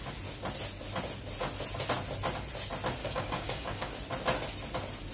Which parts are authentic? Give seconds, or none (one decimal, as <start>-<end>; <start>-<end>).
0.0-3.0; 3.9-5.1